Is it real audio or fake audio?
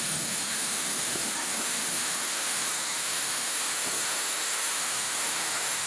fake